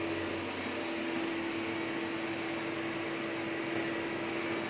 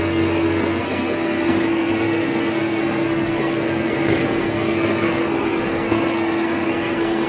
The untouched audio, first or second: first